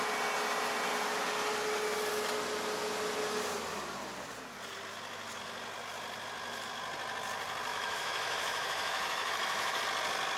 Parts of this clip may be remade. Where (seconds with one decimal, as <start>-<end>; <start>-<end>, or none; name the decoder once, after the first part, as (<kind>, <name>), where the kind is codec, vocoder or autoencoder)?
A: 7.7-9.8 (autoencoder, DAC-VAE)